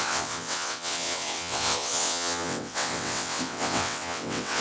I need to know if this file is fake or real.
fake